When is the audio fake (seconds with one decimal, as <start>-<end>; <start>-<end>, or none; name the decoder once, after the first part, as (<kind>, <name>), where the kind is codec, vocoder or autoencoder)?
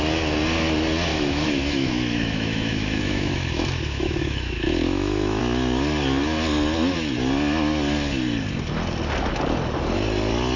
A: 1.1-5.4 (autoencoder, DAC-VAE)